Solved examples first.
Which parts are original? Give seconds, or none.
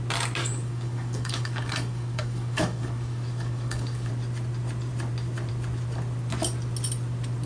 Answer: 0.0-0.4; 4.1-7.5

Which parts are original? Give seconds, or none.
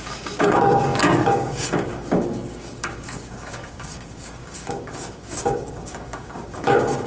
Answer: none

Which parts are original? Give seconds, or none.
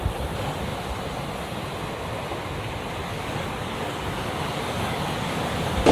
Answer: 0.0-3.0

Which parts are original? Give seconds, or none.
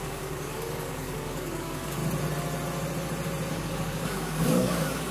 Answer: 2.0-3.5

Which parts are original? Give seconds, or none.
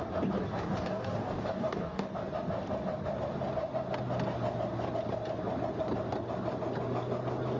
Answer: 0.0-0.5; 2.1-7.6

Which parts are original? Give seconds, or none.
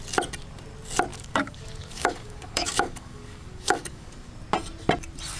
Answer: 0.0-1.1; 4.3-5.4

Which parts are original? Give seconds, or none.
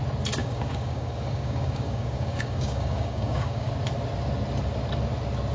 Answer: 0.0-0.4; 3.7-5.5